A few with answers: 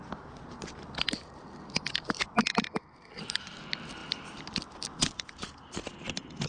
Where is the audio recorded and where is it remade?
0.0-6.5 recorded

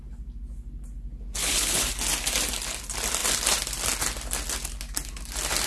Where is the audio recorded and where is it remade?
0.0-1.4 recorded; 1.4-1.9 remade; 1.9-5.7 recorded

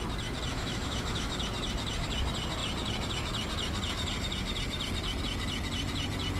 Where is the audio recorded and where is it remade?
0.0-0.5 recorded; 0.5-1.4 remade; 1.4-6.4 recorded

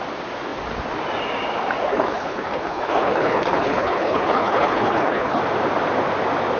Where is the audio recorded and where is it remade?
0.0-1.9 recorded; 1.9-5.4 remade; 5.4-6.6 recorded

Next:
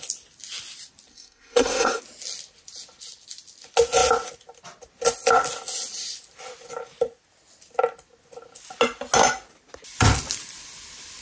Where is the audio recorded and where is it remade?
0.0-1.1 recorded; 1.1-2.0 remade; 2.0-11.2 recorded